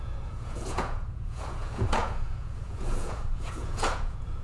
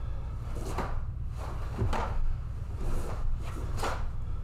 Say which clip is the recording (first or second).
second